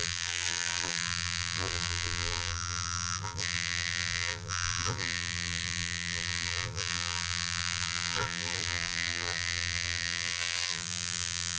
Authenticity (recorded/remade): remade